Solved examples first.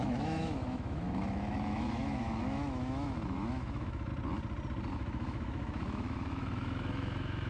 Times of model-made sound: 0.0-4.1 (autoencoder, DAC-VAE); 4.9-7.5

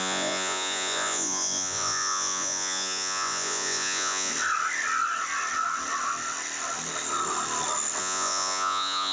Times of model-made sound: 0.0-4.3 (vocoder, Vocos); 8.0-9.1

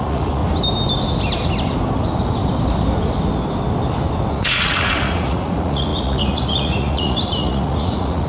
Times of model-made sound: 0.0-0.4 (vocoder, Vocos); 4.3-8.3